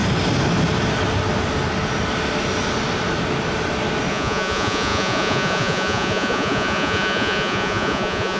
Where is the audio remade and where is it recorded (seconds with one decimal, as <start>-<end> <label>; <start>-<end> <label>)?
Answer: 0.0-4.1 recorded; 4.1-8.4 remade